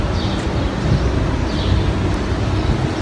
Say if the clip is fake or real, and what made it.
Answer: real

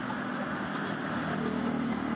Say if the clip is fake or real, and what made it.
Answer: real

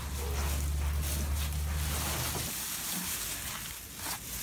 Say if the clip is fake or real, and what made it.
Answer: real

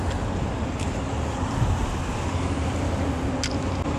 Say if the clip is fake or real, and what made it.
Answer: real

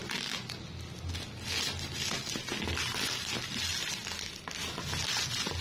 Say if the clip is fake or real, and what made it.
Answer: real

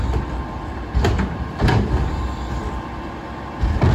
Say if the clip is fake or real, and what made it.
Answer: real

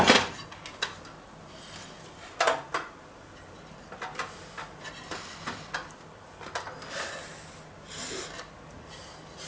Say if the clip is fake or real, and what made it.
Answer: real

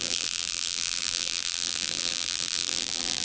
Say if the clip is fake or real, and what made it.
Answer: fake, vocoder, BigVGAN v2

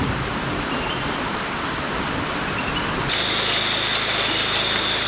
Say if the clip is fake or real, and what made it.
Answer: real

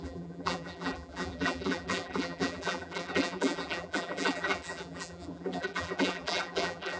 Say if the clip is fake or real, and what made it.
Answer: fake, vocoder, BigVGAN v2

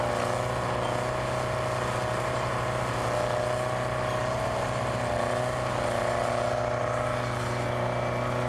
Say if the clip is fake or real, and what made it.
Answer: real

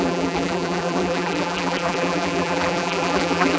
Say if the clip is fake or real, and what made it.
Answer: fake, vocoder, BigVGAN v2